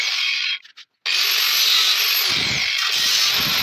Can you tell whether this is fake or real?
real